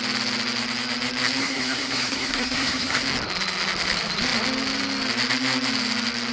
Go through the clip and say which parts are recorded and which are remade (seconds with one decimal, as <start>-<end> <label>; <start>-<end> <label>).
0.0-1.4 recorded; 1.4-3.0 remade; 3.0-6.3 recorded